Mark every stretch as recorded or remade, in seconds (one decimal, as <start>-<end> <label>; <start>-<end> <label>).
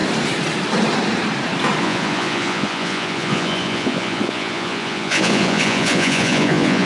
0.0-1.8 recorded; 1.8-6.9 remade